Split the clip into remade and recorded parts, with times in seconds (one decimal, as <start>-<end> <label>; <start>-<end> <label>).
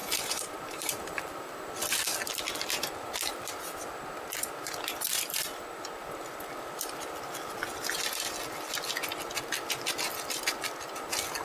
0.0-1.7 remade; 1.7-11.4 recorded